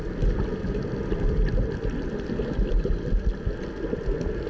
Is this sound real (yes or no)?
yes